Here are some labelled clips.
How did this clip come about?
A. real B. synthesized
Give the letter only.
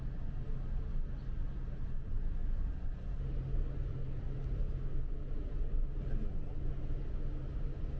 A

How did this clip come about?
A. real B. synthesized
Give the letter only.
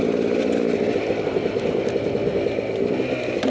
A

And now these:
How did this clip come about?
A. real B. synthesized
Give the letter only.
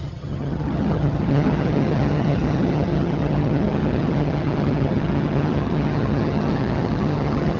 B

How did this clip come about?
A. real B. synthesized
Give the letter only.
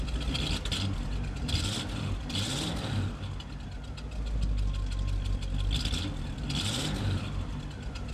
A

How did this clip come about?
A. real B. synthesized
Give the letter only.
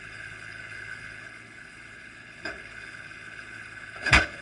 B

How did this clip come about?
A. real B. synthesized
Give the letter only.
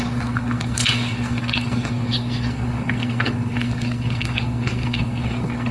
B